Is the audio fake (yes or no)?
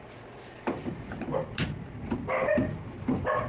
no